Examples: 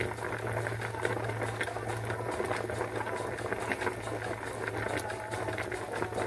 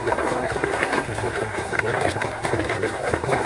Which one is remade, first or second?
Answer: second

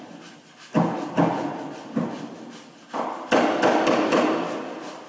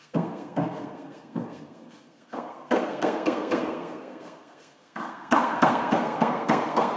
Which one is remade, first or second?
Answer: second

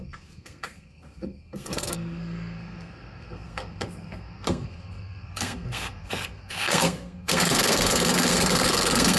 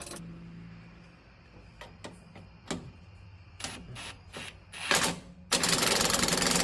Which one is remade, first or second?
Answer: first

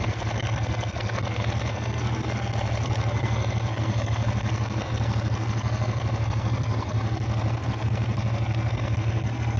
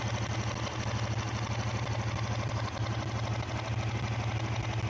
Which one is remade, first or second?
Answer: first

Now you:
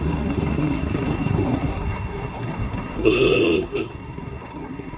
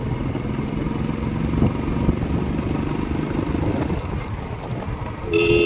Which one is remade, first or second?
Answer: first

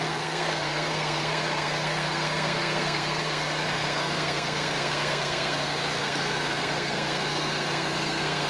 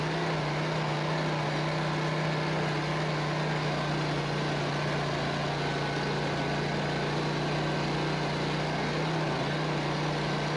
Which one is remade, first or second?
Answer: first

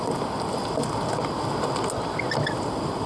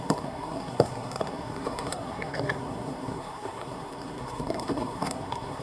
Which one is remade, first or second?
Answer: second